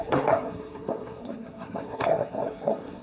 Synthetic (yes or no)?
yes